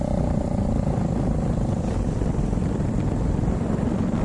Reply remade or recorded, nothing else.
remade